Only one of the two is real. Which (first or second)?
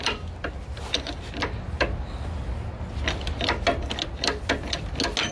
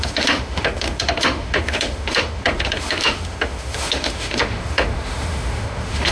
first